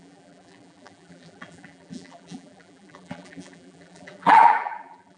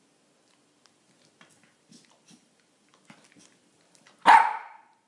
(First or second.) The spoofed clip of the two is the first